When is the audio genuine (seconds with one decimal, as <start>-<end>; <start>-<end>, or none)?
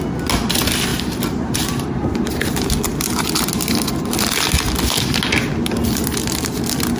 0.0-0.9; 2.5-7.0